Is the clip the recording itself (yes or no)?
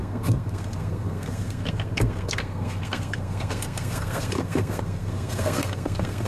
no